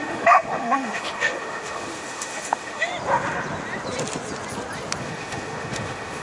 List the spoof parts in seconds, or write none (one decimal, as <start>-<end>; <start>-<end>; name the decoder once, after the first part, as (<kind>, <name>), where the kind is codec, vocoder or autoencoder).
0.0-2.9 (autoencoder, DAC-VAE); 5.0-6.2